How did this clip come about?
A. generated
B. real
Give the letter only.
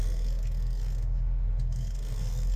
A